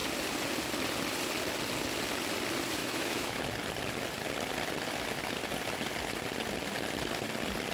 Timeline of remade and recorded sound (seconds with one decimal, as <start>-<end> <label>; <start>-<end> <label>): 0.0-2.8 recorded; 2.8-3.4 remade; 3.4-7.7 recorded